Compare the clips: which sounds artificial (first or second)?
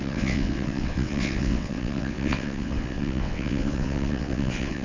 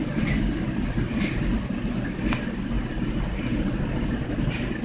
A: first